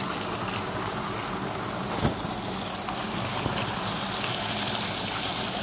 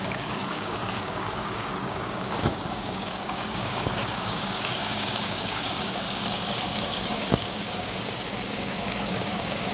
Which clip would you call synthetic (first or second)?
second